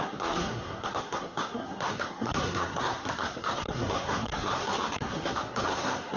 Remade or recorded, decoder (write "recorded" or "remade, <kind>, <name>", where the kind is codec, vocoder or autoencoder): remade, codec, SNAC